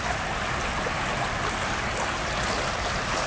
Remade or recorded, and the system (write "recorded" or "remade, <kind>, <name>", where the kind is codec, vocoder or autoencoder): recorded